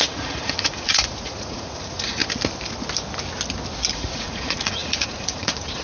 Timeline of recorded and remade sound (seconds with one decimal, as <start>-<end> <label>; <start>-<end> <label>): 0.0-2.2 remade; 2.2-3.9 recorded; 3.9-5.8 remade